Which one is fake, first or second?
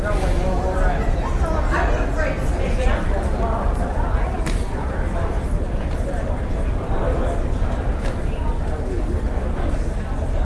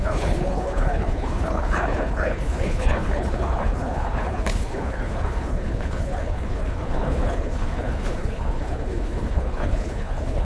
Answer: second